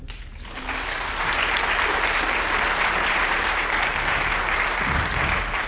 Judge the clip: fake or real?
fake